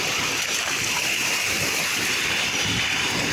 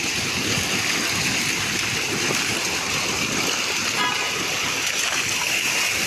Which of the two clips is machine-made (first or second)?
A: first